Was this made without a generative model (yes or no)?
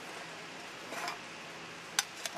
yes